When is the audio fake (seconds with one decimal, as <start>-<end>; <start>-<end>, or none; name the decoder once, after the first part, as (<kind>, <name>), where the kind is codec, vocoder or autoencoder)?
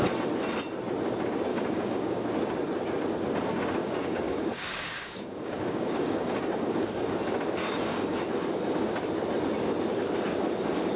1.5-2.3 (codec, DAC); 3.8-7.1; 7.6-8.2